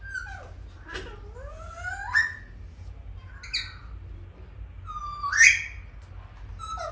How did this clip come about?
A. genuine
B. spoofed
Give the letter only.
A